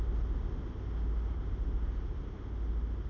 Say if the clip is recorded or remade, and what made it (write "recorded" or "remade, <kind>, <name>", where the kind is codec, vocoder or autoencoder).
recorded